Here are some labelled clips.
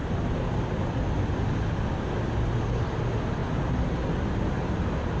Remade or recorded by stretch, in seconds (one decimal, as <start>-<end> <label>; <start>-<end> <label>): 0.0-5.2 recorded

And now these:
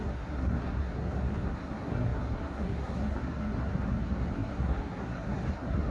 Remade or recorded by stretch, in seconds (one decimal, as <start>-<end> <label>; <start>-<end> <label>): 0.0-5.9 remade

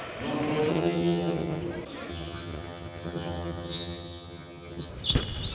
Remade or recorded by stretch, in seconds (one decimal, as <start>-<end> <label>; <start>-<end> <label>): 0.0-0.7 recorded; 0.7-1.6 remade; 1.6-2.1 recorded; 2.1-4.9 remade; 4.9-5.5 recorded

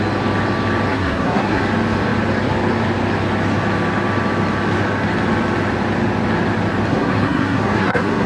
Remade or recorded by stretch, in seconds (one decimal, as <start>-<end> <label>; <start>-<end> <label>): 0.0-0.9 recorded; 0.9-1.6 remade; 1.6-6.9 recorded; 6.9-8.3 remade

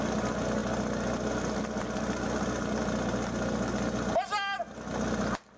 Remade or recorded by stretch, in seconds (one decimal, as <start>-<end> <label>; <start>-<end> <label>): 0.0-5.6 recorded

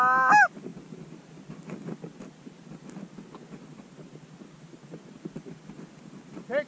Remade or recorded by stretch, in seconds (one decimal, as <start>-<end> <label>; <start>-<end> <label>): 0.0-6.7 recorded

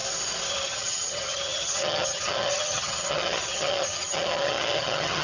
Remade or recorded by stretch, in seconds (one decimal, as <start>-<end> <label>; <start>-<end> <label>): 0.0-0.5 recorded; 0.5-5.2 remade

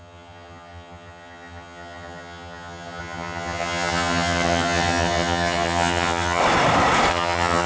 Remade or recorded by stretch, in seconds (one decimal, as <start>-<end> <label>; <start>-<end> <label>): 0.0-6.4 remade; 6.4-7.1 recorded; 7.1-7.7 remade